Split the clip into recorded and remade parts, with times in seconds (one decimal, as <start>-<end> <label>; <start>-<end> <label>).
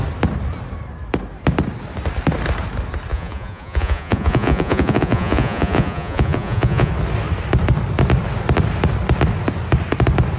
0.0-3.1 recorded; 3.1-6.9 remade; 6.9-10.4 recorded